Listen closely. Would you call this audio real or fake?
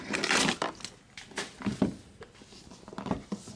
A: real